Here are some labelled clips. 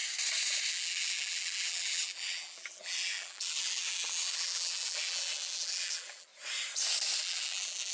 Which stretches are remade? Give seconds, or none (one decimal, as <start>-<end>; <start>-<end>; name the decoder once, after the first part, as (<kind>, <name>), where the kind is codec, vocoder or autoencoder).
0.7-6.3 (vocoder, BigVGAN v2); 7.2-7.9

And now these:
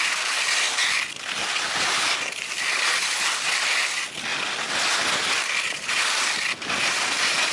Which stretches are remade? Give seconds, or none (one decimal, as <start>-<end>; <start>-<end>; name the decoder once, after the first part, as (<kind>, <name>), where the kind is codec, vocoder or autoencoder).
none

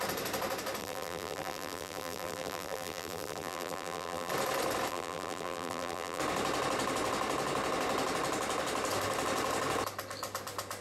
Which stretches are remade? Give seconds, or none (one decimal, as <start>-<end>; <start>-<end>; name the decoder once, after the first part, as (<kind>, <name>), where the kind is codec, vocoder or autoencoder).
0.8-4.3 (vocoder, BigVGAN v2); 4.9-6.2

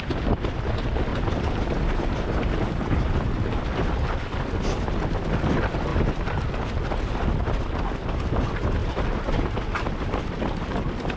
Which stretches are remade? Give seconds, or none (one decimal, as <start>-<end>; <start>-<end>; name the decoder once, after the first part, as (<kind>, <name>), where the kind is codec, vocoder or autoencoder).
1.1-1.8 (vocoder, BigVGAN v2); 8.8-9.5

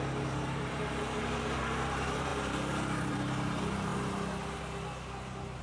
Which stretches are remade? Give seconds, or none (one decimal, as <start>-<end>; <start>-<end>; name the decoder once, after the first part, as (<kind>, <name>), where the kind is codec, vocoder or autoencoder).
0.0-3.9 (vocoder, BigVGAN v2)

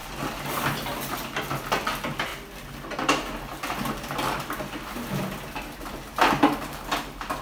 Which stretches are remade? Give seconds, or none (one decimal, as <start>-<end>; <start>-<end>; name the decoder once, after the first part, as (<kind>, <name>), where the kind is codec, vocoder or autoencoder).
none

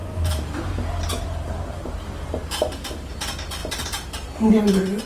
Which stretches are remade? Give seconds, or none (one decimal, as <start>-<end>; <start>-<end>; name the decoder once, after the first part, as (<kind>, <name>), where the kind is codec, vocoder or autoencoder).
0.0-3.1 (vocoder, BigVGAN v2)

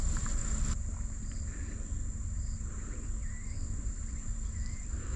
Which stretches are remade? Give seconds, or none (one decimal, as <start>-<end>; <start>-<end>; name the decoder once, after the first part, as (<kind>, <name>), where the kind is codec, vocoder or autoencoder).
0.0-0.4 (vocoder, BigVGAN v2); 2.7-3.2; 3.8-5.2